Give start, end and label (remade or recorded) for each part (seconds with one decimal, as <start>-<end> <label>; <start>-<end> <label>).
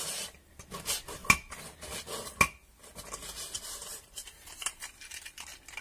0.0-5.8 recorded